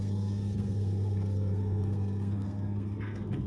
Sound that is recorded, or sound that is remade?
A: remade